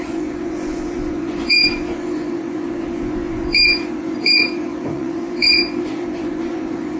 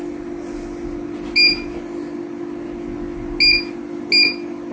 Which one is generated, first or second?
first